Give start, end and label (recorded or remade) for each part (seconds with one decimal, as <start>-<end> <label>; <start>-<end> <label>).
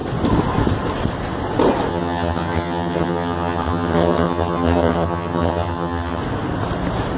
0.0-1.9 recorded; 1.9-6.2 remade; 6.2-7.2 recorded